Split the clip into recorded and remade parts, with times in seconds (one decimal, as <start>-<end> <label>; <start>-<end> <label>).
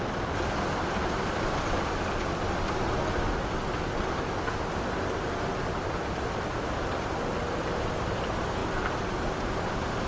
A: 0.0-10.1 recorded